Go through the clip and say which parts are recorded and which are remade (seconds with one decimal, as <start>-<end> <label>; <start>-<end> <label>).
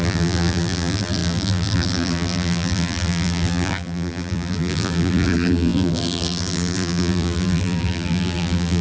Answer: 0.0-8.8 remade